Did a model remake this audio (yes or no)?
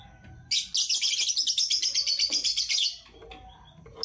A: no